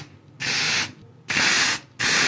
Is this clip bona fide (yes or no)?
yes